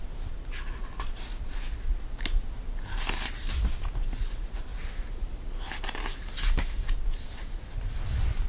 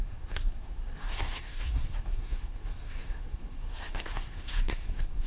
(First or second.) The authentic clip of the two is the first